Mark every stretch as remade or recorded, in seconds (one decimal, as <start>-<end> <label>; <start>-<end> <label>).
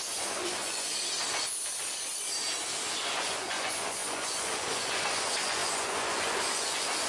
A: 0.0-0.9 remade; 0.9-3.0 recorded; 3.0-7.1 remade